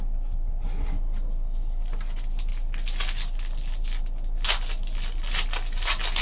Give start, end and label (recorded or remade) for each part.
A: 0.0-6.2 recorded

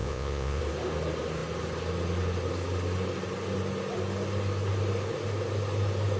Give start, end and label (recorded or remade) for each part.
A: 0.0-0.6 remade; 0.6-6.2 recorded

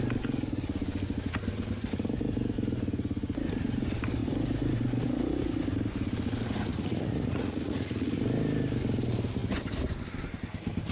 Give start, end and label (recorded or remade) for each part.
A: 0.0-6.7 recorded; 6.7-8.2 remade; 8.2-10.9 recorded

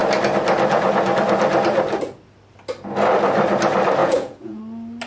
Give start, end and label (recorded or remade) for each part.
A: 0.0-4.0 recorded; 4.0-4.6 remade; 4.6-5.1 recorded

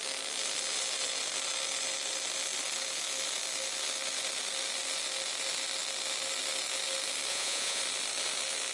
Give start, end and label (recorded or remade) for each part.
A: 0.0-7.3 recorded; 7.3-7.8 remade; 7.8-8.7 recorded

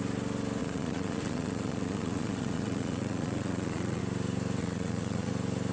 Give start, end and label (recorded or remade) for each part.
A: 0.0-0.6 recorded; 0.6-4.0 remade; 4.0-4.6 recorded; 4.6-5.3 remade; 5.3-5.7 recorded

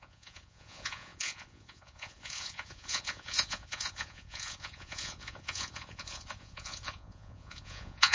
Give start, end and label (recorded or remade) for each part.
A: 0.0-8.1 remade